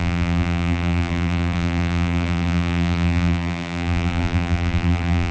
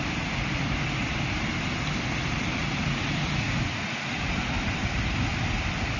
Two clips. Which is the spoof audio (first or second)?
first